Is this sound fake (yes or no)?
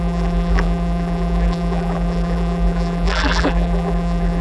yes